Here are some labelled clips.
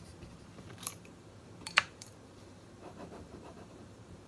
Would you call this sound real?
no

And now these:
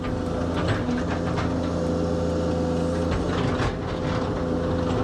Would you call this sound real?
yes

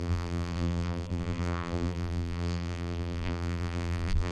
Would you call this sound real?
no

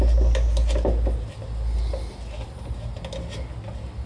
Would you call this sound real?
yes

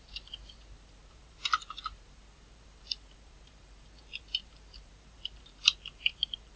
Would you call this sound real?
no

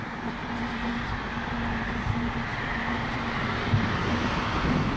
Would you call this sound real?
yes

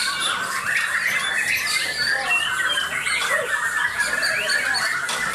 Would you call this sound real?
yes